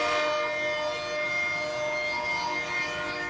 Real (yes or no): yes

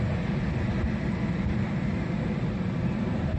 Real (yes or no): yes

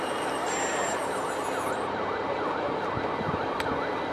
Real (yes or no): yes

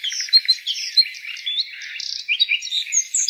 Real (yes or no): no